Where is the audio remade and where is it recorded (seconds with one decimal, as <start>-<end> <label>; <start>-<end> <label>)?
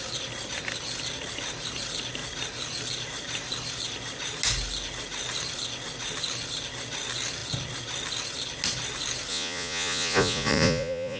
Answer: 0.0-9.3 recorded; 9.3-11.2 remade